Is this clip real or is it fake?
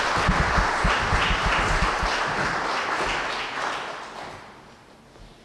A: real